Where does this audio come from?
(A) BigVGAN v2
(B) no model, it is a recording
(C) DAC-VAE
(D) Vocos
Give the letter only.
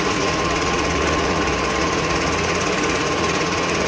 D